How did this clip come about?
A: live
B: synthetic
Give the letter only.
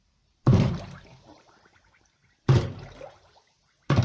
B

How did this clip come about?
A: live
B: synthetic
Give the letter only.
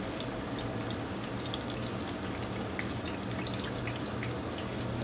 A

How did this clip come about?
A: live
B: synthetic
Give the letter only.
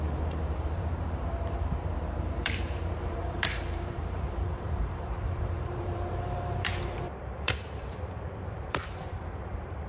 B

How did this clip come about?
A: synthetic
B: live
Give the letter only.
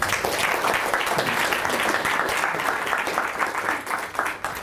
B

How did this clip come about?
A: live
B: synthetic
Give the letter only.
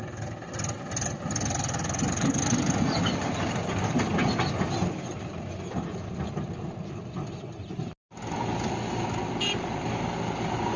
A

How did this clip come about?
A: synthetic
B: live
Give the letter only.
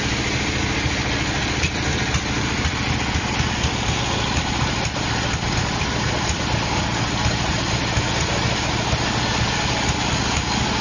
B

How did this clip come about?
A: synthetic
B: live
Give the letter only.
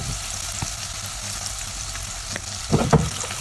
B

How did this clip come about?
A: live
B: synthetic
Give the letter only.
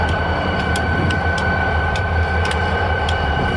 B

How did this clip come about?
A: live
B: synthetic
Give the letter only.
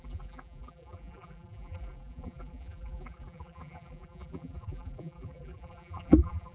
B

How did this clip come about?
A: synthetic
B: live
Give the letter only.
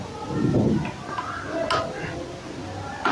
B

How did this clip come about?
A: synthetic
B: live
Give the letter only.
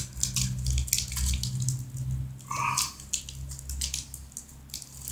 B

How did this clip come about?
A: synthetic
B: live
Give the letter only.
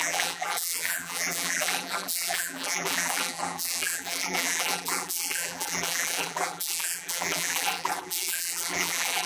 A